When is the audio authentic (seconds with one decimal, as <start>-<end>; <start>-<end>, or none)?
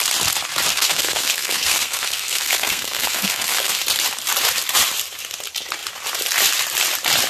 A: 0.0-0.7; 3.8-7.3